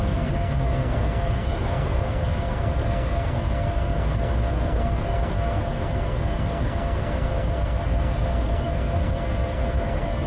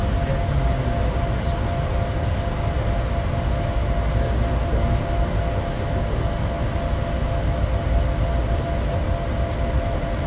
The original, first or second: second